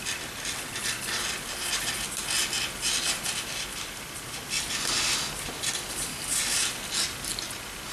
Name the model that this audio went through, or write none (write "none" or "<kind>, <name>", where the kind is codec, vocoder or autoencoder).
none